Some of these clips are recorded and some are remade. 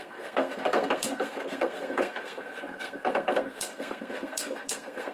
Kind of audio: remade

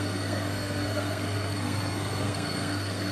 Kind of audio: remade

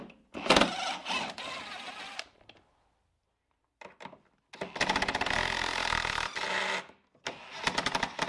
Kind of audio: recorded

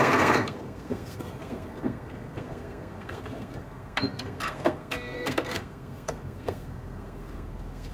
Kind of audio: remade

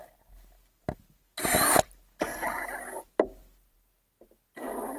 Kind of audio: recorded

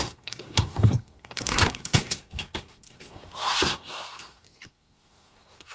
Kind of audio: remade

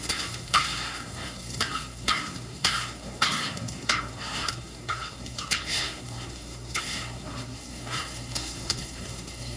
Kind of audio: remade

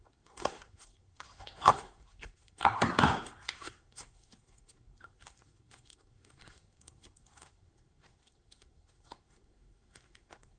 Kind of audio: remade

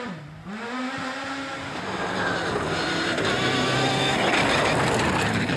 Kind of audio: recorded